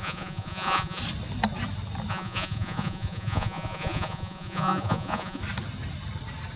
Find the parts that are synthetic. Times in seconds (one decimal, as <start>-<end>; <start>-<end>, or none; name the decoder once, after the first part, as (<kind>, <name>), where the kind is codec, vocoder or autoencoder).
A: 0.0-1.0 (vocoder, Vocos); 2.1-5.4